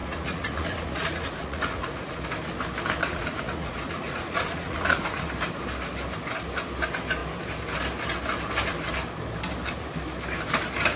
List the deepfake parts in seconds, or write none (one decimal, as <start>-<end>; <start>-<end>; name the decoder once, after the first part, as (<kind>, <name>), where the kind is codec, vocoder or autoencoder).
0.0-2.2 (vocoder, Vocos); 3.0-5.3